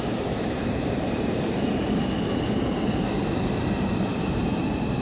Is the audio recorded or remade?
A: remade